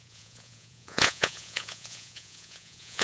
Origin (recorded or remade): remade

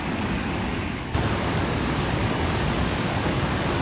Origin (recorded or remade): remade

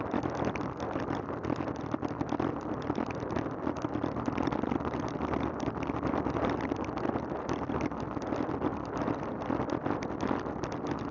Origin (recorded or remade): recorded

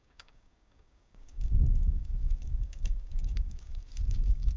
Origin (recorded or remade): remade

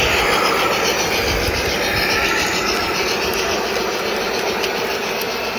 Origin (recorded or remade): recorded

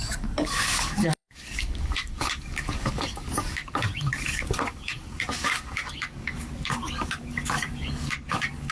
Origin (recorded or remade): remade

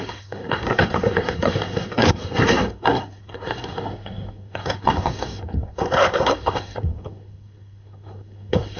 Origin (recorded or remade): remade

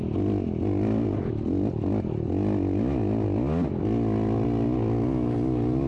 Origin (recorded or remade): recorded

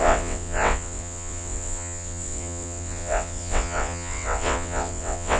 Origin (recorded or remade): remade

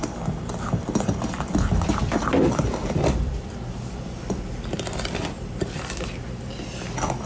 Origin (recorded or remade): remade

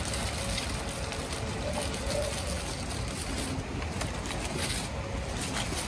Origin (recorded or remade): recorded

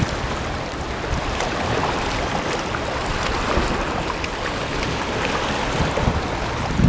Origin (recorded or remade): recorded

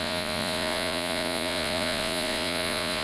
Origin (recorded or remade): remade